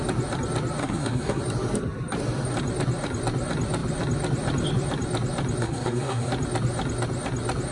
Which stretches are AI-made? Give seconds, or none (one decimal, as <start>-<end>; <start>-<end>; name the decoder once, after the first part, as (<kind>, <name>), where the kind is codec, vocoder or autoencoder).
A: 0.8-1.4 (codec, SNAC); 5.6-6.3

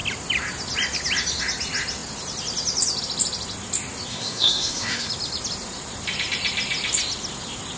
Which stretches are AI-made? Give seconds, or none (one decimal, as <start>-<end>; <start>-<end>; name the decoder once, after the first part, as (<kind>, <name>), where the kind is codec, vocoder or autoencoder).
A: 4.1-5.1 (codec, SNAC)

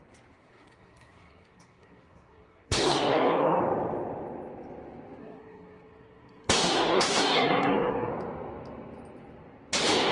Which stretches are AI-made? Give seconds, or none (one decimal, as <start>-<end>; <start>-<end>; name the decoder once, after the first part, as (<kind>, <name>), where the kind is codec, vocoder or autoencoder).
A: 0.4-3.6 (codec, SNAC); 5.2-8.1

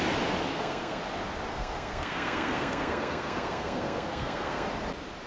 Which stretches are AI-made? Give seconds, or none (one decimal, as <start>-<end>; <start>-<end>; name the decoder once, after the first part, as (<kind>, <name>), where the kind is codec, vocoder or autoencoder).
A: 0.5-1.0 (codec, SNAC); 1.5-4.7

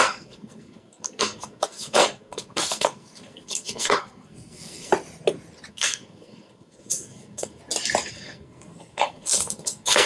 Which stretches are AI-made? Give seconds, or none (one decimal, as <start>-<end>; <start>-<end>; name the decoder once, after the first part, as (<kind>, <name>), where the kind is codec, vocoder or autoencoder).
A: 0.0-4.9 (codec, SNAC); 5.7-7.6; 8.1-10.1